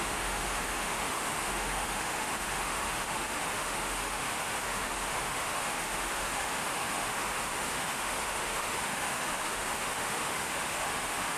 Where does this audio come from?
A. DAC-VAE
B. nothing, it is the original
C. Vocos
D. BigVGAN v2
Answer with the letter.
A